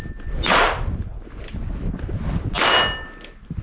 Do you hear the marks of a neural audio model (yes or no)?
no